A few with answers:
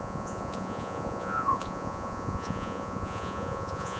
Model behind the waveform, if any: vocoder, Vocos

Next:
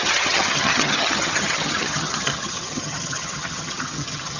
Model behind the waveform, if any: vocoder, HiFi-GAN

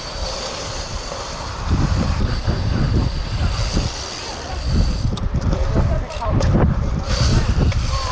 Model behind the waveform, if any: vocoder, BigVGAN v2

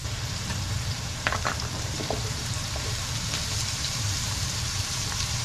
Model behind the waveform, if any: vocoder, BigVGAN v2